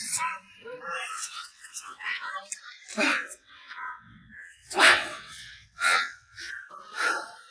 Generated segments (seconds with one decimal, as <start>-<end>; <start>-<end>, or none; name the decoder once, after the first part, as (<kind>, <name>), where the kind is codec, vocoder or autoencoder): 1.1-2.3 (vocoder, WaveNeXt); 3.1-6.5